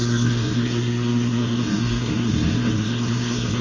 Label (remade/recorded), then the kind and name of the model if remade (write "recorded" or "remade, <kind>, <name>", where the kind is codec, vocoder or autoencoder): remade, codec, SNAC